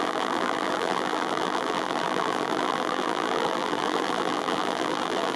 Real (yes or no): no